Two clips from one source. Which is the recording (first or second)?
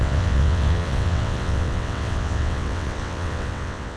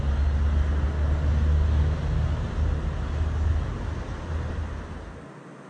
second